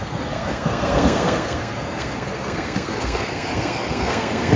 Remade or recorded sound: remade